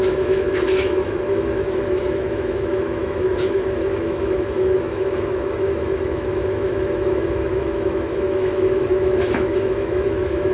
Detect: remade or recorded remade